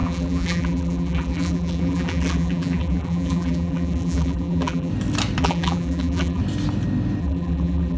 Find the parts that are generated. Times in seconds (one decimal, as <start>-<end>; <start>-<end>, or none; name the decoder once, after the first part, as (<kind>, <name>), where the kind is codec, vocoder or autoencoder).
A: 0.0-4.9 (vocoder, BigVGAN v2); 5.4-6.4; 7.2-8.0